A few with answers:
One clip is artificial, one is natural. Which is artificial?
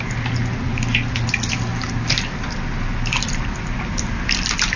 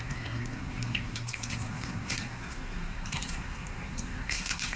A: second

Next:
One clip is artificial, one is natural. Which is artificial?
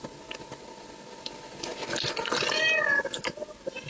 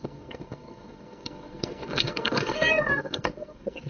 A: second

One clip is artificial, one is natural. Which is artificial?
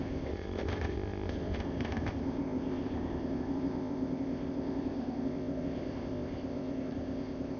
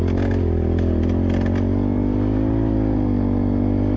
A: first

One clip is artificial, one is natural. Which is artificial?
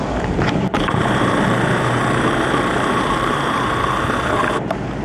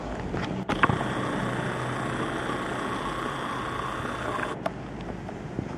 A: first